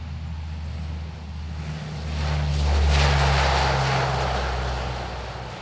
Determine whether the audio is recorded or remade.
recorded